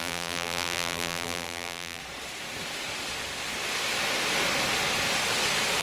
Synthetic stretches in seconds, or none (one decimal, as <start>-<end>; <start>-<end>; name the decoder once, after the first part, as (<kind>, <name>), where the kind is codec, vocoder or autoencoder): 0.0-2.0 (vocoder, BigVGAN v2)